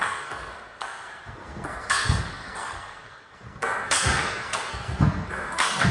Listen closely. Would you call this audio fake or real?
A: fake